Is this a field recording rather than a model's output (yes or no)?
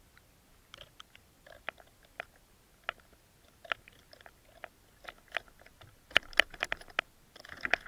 yes